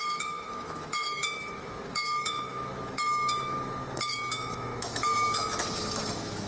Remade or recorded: remade